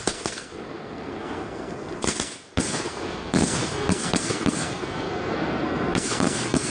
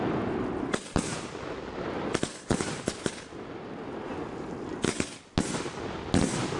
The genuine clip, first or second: second